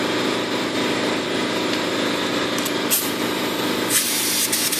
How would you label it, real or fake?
fake